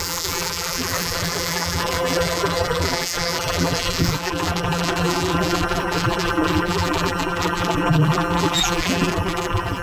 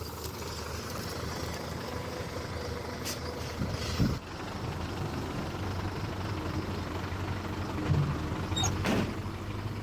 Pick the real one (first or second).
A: second